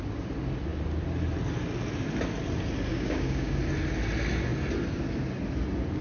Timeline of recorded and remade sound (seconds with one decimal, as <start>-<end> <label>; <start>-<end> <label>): 0.0-2.9 recorded; 2.9-3.6 remade; 3.6-6.0 recorded